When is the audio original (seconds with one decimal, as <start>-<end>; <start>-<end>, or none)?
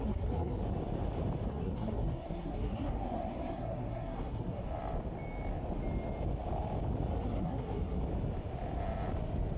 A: 0.6-1.5; 4.6-7.1; 8.0-9.6